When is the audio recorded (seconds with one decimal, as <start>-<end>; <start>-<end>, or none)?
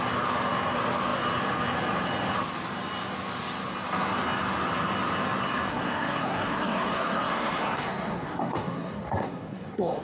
0.0-5.7